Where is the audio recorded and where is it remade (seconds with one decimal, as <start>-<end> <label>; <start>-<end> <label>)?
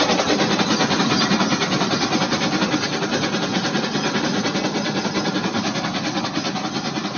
0.0-7.2 recorded